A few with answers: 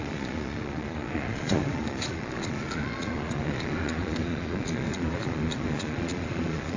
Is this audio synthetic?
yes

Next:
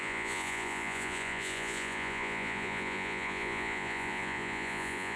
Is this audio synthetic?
yes